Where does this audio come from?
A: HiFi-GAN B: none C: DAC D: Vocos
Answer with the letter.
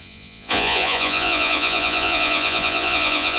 D